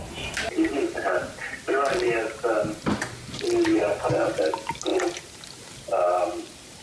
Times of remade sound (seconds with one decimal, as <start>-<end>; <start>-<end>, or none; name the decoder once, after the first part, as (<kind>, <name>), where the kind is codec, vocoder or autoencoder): 3.7-4.4 (vocoder, Vocos)